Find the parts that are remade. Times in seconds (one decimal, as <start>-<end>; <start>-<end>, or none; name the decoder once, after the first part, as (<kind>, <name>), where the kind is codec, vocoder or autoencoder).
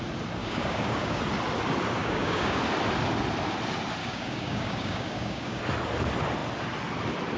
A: 0.4-1.2 (codec, DAC); 2.0-2.6; 4.0-5.6